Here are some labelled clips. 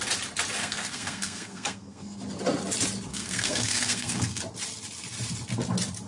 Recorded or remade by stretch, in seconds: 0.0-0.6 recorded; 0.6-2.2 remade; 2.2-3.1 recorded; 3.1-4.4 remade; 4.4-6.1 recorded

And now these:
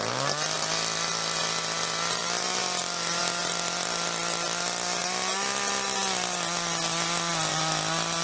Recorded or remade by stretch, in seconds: 0.0-8.2 recorded

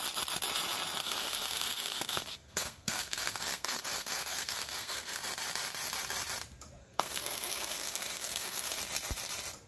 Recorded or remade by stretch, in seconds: 0.0-1.0 recorded; 1.0-5.2 remade; 5.2-6.8 recorded; 6.8-8.8 remade; 8.8-9.7 recorded

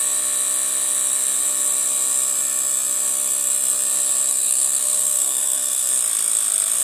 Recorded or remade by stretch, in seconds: 0.0-4.3 recorded; 4.3-5.9 remade; 5.9-6.8 recorded

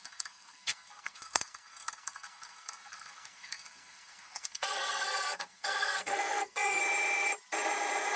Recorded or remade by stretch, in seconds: 0.0-6.8 remade; 6.8-8.2 recorded

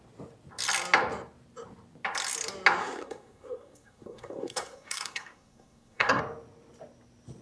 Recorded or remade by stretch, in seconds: 0.0-2.8 recorded; 2.8-6.2 remade; 6.2-7.4 recorded

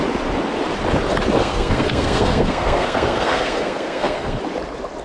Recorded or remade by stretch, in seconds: 0.0-1.4 recorded; 1.4-4.4 remade; 4.4-5.0 recorded

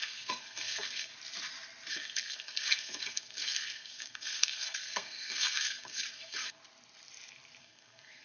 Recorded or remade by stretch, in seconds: 0.0-1.1 remade; 1.1-1.9 recorded; 1.9-6.6 remade; 6.6-7.6 recorded; 7.6-8.2 remade